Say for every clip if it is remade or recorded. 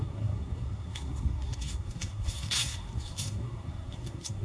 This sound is remade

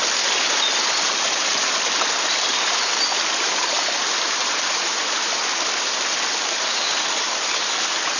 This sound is recorded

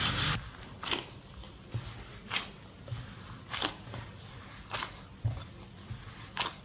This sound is recorded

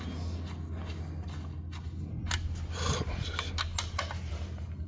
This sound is recorded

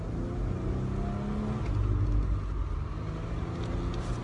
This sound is recorded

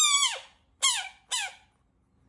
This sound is recorded